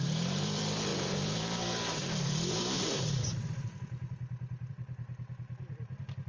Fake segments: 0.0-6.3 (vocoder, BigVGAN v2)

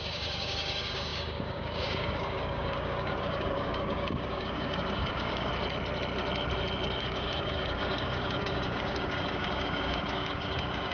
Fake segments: 0.0-5.5 (codec, DAC); 7.0-10.9

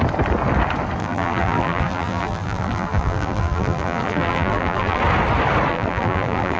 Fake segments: 1.0-5.0 (vocoder, BigVGAN v2); 5.7-6.6